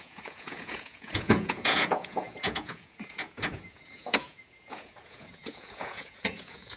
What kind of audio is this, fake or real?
fake